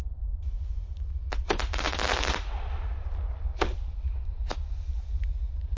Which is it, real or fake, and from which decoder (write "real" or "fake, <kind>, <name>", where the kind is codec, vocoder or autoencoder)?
real